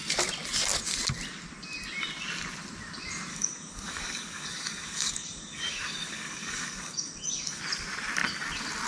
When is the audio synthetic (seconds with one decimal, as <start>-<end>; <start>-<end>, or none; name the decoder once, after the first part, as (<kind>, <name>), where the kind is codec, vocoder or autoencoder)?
3.3-7.6 (codec, DAC)